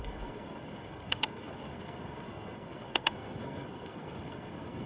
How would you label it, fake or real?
fake